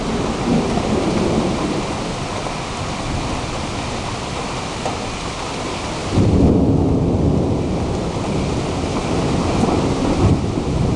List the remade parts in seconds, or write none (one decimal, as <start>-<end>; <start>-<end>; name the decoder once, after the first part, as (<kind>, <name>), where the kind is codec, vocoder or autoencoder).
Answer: 0.5-2.4 (vocoder, BigVGAN v2)

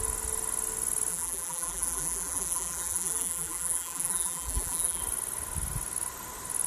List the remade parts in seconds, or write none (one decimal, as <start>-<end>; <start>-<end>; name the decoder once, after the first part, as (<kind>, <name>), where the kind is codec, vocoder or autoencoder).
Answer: 1.1-5.0 (vocoder, BigVGAN v2)

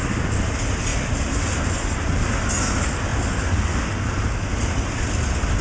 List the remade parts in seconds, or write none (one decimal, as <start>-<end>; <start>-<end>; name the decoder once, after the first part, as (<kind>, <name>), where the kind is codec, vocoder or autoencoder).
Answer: none

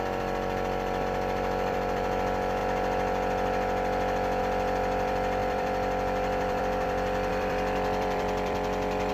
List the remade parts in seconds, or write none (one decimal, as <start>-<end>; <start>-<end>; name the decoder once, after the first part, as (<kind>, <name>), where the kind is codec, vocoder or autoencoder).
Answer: 0.0-2.6 (vocoder, BigVGAN v2); 4.4-9.1

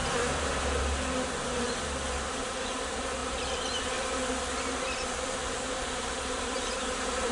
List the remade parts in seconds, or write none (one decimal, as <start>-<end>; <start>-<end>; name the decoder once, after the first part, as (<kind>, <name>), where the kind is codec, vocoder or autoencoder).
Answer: 0.0-0.8 (vocoder, BigVGAN v2); 1.5-2.7; 3.2-4.1; 5.4-7.3

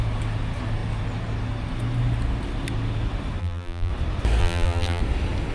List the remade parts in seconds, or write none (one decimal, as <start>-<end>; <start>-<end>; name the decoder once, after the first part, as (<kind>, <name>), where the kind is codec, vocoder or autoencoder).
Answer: 3.4-3.9 (vocoder, BigVGAN v2); 4.4-5.0

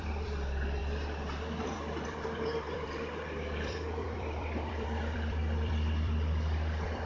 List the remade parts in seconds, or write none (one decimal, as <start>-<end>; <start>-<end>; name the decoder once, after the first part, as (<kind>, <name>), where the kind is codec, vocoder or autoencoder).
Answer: 0.0-0.8 (vocoder, BigVGAN v2); 1.6-7.1